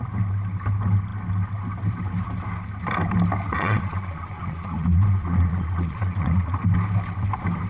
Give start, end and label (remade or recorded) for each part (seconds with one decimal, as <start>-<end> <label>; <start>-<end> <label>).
0.0-3.5 recorded; 3.5-6.6 remade; 6.6-7.7 recorded